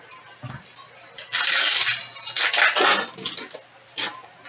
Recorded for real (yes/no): yes